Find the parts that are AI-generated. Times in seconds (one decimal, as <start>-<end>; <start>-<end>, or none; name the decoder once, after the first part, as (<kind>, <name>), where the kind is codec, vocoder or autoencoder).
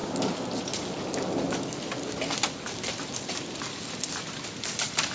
none